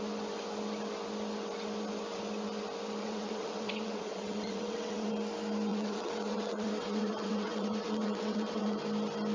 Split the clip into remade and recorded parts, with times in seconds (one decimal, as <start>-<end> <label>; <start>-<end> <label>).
0.0-3.0 recorded; 3.0-5.1 remade; 5.1-5.7 recorded; 5.7-8.8 remade; 8.8-9.3 recorded

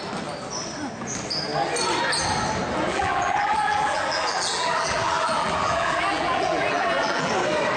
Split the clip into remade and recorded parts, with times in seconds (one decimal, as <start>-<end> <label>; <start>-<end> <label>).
0.0-2.9 recorded; 2.9-7.3 remade; 7.3-7.8 recorded

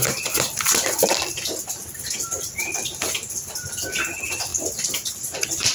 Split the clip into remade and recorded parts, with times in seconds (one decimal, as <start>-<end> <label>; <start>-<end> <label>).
0.0-1.1 remade; 1.1-2.6 recorded; 2.6-4.5 remade; 4.5-5.1 recorded; 5.1-5.7 remade

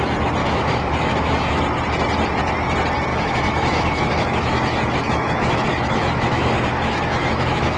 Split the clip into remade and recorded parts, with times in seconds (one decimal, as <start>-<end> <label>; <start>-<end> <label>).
0.0-0.4 recorded; 0.4-1.6 remade; 1.6-3.1 recorded; 3.1-7.8 remade

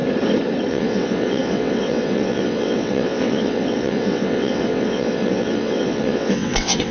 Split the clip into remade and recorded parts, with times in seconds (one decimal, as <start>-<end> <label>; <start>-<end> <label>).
0.0-0.7 recorded; 0.7-6.9 remade

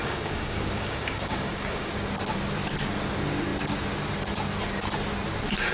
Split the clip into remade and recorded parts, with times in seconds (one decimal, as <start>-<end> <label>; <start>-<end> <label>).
0.0-1.9 remade; 1.9-5.7 recorded

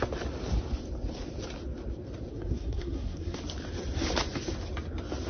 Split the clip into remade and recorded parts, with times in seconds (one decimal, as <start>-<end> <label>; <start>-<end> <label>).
0.0-2.3 recorded; 2.3-3.4 remade; 3.4-5.3 recorded